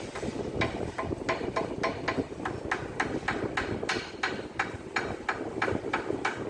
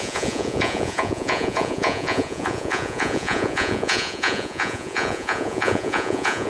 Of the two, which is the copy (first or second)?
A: second